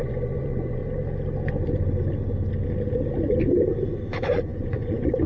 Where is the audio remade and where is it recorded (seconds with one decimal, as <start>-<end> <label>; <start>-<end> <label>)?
0.0-0.8 remade; 0.8-4.0 recorded; 4.0-5.3 remade